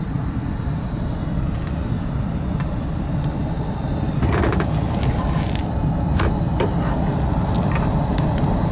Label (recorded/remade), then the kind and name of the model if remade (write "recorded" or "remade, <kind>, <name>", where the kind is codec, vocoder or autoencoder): recorded